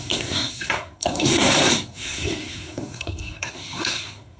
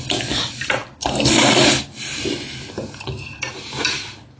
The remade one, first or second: first